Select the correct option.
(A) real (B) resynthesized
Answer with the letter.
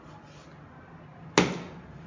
A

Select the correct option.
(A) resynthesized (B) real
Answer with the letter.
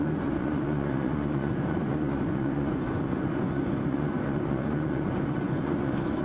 A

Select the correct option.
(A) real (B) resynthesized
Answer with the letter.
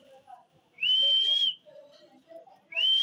A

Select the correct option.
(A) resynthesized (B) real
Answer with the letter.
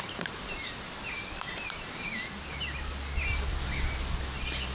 B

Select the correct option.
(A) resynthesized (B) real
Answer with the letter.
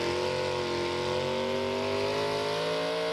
B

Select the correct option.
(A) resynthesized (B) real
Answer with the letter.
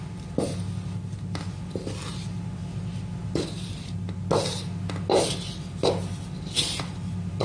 B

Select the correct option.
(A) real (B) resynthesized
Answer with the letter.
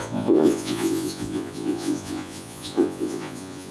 B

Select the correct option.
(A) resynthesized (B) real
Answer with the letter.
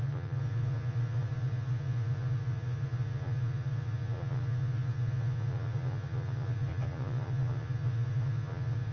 A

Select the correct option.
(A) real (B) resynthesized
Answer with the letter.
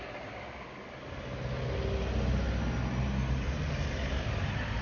A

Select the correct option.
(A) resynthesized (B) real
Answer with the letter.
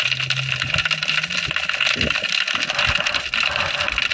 B